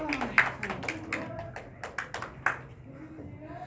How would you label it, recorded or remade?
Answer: recorded